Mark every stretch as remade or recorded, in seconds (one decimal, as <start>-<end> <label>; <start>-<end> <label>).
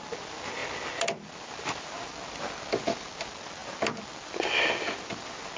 0.0-5.6 recorded